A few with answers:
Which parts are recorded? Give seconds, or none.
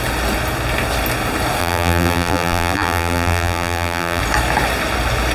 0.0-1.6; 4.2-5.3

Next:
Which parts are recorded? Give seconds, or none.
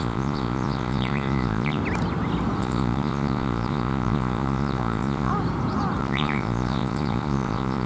1.8-2.6; 5.3-6.0